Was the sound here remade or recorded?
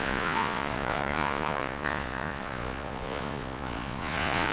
remade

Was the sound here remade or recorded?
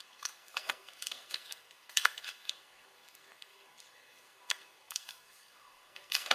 remade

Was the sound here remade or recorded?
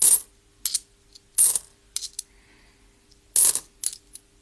recorded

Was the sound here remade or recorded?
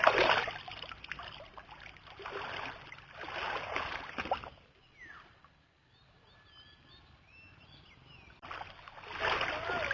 recorded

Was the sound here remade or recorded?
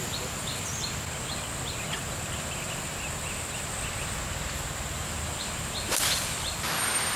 recorded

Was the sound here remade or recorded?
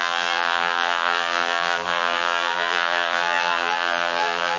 remade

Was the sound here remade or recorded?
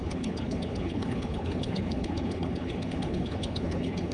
remade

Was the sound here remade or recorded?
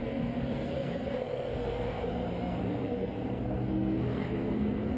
remade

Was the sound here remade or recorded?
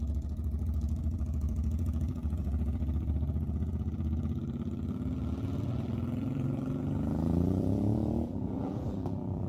remade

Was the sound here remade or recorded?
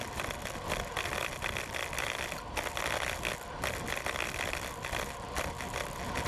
recorded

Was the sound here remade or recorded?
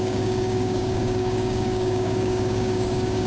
remade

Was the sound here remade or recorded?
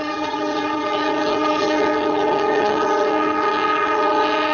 remade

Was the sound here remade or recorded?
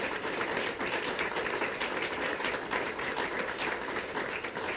recorded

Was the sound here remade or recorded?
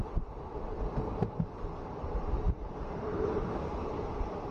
recorded